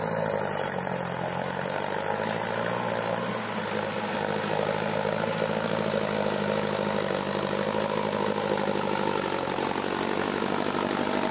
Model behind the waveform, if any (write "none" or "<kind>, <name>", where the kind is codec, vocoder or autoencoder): none